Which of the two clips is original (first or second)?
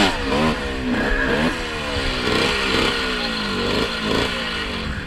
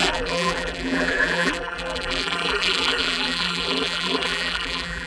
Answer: first